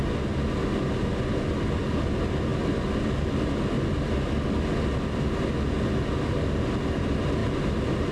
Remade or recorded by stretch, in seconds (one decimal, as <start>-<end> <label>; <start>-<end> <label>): 0.0-8.1 recorded